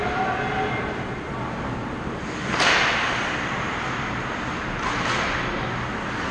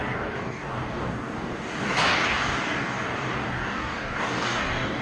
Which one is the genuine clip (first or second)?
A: first